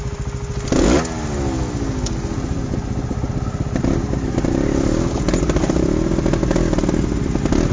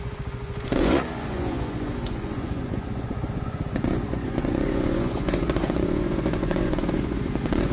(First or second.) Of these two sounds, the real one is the first